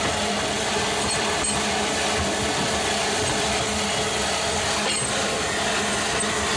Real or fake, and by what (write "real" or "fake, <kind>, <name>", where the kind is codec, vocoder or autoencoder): real